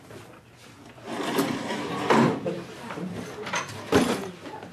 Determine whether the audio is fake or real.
real